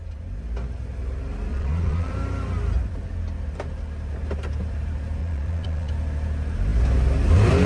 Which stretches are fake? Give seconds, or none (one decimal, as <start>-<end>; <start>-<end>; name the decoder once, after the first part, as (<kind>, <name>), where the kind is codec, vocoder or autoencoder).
1.5-2.1 (vocoder, Vocos); 5.2-5.9